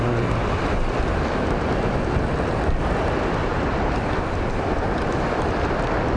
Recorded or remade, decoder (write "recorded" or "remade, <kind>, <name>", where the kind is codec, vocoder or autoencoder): recorded